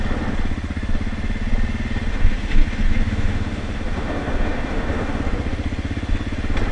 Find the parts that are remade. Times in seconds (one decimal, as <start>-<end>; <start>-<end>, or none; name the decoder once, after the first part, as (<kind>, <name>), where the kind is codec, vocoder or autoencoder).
2.1-5.2 (autoencoder, DAC-VAE)